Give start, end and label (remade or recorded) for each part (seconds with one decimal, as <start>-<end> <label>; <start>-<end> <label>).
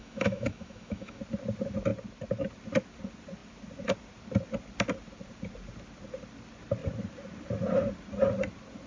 0.0-1.2 remade; 1.2-8.9 recorded